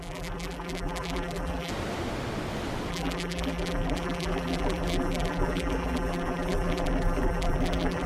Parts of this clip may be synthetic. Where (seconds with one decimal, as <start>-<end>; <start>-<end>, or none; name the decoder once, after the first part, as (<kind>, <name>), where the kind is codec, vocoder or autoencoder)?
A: 0.0-1.7 (vocoder, BigVGAN v2); 2.9-8.1